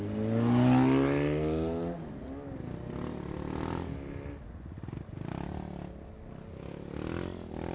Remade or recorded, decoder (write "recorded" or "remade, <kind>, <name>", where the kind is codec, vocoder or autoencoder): recorded